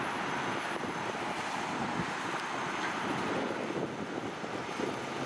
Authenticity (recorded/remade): recorded